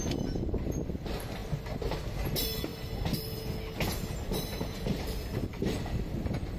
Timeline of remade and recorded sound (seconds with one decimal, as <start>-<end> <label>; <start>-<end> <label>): 0.0-5.5 recorded; 5.5-6.6 remade